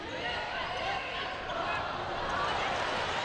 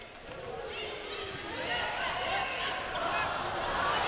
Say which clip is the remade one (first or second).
first